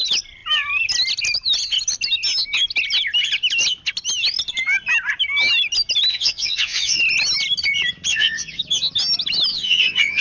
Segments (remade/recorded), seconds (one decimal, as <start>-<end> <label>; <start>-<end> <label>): 0.0-6.1 recorded; 6.1-7.0 remade; 7.0-8.1 recorded; 8.1-8.6 remade; 8.6-9.5 recorded; 9.5-10.2 remade